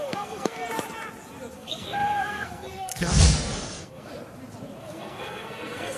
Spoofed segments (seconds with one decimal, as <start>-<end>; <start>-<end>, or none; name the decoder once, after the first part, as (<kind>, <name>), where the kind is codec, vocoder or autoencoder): 0.0-0.6 (codec, SNAC); 1.5-4.1; 4.8-6.0